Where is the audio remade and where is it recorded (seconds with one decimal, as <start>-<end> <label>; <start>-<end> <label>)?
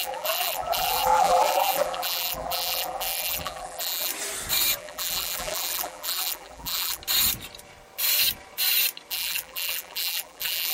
0.0-4.1 remade; 4.1-4.8 recorded; 4.8-7.0 remade; 7.0-9.1 recorded; 9.1-10.7 remade